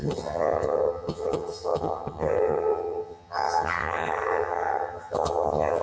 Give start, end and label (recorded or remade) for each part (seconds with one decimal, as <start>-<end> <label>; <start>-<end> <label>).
0.0-5.8 remade